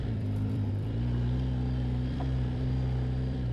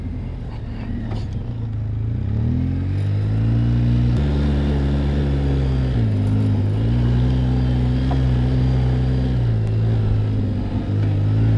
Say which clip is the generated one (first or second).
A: first